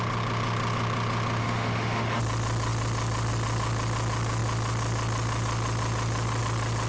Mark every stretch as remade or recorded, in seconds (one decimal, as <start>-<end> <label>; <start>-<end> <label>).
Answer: 0.0-1.4 recorded; 1.4-2.2 remade; 2.2-6.9 recorded